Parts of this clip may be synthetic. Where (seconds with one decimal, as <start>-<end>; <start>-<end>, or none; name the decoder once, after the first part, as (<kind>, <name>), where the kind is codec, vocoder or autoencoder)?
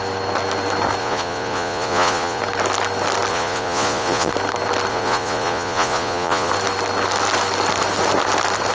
1.0-2.4 (vocoder, Vocos); 3.3-4.3; 4.9-6.5